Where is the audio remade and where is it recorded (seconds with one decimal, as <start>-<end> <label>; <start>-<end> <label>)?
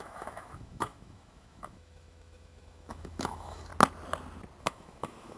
0.0-3.7 remade; 3.7-4.6 recorded; 4.6-5.4 remade